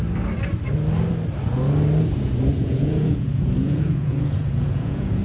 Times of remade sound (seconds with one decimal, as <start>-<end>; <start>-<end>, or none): 2.6-5.2